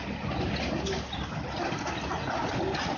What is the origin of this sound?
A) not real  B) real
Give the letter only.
B